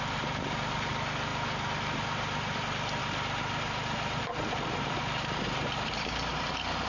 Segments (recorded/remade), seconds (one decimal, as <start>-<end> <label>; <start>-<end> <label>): 0.0-1.3 recorded; 1.3-2.6 remade; 2.6-3.0 recorded; 3.0-6.5 remade; 6.5-6.9 recorded